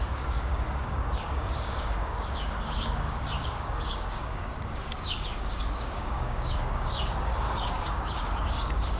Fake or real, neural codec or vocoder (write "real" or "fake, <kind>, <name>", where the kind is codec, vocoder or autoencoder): fake, codec, DAC